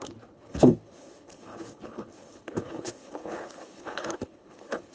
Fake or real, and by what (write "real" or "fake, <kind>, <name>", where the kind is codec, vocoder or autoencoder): fake, codec, HILCodec